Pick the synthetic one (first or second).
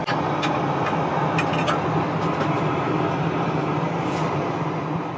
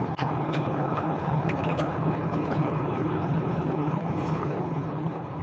second